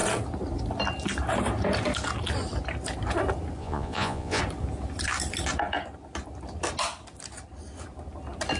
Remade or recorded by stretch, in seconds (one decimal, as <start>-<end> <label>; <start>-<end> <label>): 0.0-3.6 recorded; 3.6-4.4 remade; 4.4-8.6 recorded

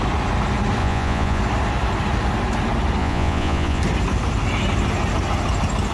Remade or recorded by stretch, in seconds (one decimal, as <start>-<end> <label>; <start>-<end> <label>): 0.0-0.8 recorded; 0.8-1.4 remade; 1.4-3.0 recorded; 3.0-3.8 remade; 3.8-5.9 recorded

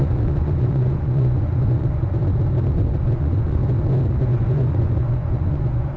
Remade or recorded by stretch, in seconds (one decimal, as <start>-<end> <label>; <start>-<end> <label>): 0.0-2.2 remade; 2.2-2.7 recorded; 2.7-3.6 remade; 3.6-4.2 recorded; 4.2-6.0 remade

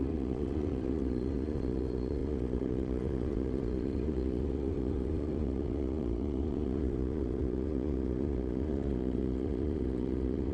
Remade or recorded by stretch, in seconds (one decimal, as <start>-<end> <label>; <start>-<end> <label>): 0.0-10.5 remade

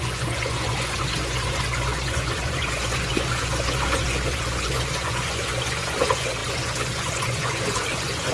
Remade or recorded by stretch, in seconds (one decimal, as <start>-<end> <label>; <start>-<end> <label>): 0.0-8.3 remade